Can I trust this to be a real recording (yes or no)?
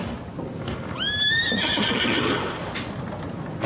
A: yes